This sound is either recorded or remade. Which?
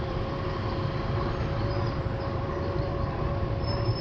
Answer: recorded